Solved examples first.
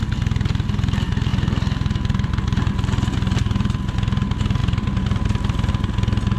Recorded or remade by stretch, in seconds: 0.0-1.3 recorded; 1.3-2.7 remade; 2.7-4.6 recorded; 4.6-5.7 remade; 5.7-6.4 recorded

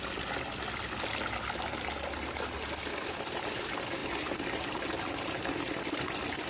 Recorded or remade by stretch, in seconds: 0.0-6.5 recorded

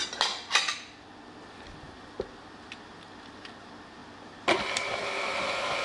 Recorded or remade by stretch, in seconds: 0.0-3.3 recorded; 3.3-5.8 remade